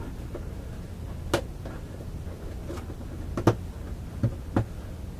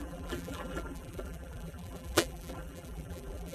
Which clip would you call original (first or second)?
first